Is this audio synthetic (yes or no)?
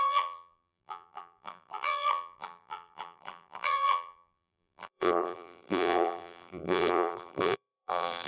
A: yes